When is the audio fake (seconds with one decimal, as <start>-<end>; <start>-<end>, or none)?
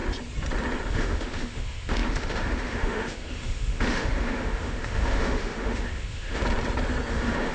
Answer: 0.9-6.4; 7.1-7.5